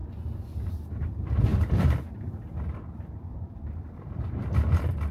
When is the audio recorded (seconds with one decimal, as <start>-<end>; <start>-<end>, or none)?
0.0-0.7